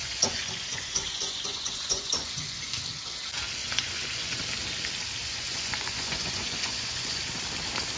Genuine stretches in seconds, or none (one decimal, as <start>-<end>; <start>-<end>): 2.8-3.6; 4.4-5.2; 7.2-8.0